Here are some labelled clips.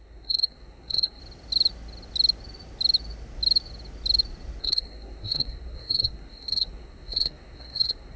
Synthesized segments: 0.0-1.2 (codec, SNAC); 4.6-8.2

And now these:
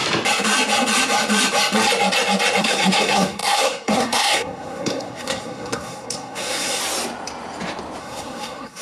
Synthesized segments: 2.6-6.8 (codec, SNAC); 8.0-8.8

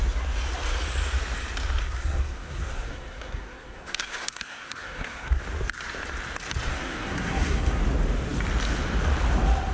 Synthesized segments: 1.8-5.4 (codec, SNAC); 6.7-7.8

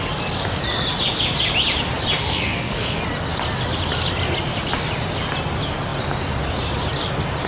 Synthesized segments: 2.2-3.0 (codec, SNAC)

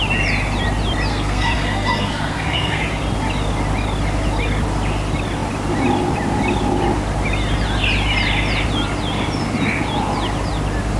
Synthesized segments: 1.1-2.8 (codec, SNAC)

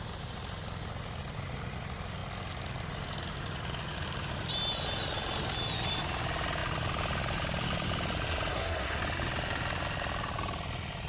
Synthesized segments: 8.5-9.0 (codec, SNAC)

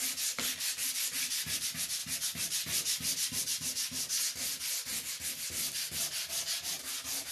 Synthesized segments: none

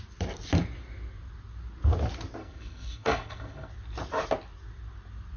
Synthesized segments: 2.4-3.7 (codec, SNAC)